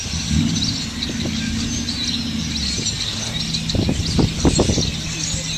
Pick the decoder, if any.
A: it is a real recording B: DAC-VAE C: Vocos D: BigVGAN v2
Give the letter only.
A